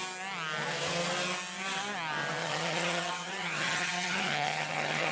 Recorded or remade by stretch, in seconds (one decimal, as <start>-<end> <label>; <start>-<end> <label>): 0.0-2.4 recorded; 2.4-5.1 remade